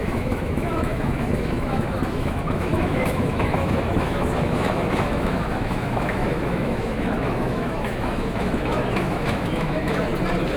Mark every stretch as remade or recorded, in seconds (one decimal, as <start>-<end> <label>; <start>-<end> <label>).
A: 0.0-10.1 remade; 10.1-10.6 recorded